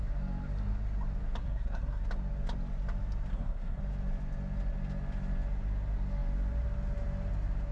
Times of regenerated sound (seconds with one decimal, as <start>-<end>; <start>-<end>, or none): 1.4-2.0; 3.3-3.8